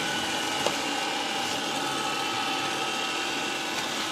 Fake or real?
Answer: real